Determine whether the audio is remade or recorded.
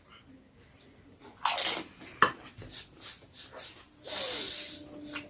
recorded